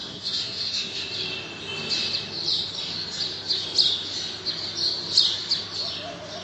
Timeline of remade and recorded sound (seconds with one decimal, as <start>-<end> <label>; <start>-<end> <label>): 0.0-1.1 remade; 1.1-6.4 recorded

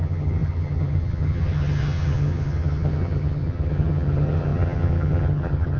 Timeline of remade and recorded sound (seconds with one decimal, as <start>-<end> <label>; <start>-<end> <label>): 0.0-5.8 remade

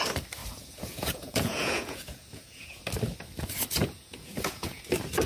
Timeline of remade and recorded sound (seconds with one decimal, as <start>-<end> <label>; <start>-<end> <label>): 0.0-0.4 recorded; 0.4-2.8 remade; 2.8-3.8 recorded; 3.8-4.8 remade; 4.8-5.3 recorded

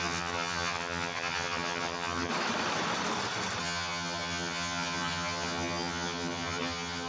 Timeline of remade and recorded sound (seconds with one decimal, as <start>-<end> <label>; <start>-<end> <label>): 0.0-2.3 remade; 2.3-3.6 recorded; 3.6-7.1 remade

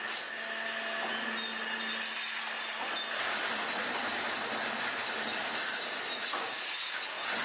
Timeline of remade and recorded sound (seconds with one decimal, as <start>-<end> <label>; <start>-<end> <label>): 0.0-7.4 recorded

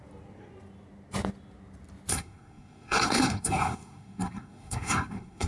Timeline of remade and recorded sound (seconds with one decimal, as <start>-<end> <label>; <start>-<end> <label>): 0.0-2.1 recorded; 2.1-5.5 remade